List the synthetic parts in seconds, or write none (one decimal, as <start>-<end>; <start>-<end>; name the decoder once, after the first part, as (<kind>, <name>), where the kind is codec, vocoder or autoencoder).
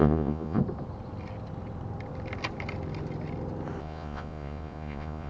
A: 0.0-0.6 (vocoder, Vocos); 3.8-5.3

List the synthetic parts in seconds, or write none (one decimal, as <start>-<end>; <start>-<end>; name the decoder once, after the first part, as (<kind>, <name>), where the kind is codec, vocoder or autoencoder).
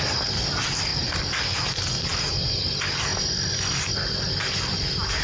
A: none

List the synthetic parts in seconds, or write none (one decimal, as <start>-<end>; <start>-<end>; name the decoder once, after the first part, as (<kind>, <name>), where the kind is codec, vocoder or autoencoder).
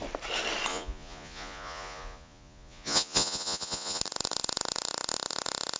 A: 0.7-4.0 (vocoder, Vocos)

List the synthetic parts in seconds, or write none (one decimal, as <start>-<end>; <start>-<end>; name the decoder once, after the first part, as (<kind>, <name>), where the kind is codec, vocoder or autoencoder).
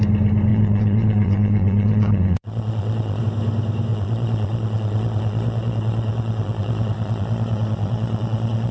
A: 0.5-3.2 (vocoder, Vocos); 3.9-8.7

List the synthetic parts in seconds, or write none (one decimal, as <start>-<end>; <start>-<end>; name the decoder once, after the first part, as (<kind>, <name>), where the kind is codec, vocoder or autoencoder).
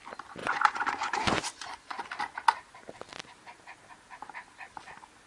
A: 0.4-2.0 (vocoder, Vocos)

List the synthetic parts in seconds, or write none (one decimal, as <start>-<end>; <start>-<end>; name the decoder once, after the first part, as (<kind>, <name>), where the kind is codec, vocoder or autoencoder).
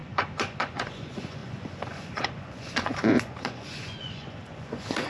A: 0.0-5.1 (vocoder, Vocos)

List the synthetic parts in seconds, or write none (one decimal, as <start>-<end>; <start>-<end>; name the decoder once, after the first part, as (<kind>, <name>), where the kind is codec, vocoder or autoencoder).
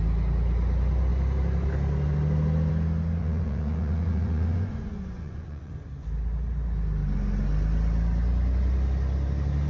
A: 3.2-5.7 (vocoder, Vocos)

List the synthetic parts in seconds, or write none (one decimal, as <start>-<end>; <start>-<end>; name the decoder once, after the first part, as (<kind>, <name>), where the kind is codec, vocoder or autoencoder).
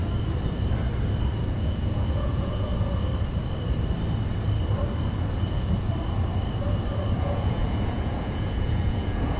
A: 1.5-2.7 (vocoder, Vocos); 7.2-9.4